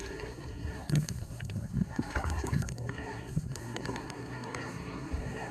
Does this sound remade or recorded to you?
remade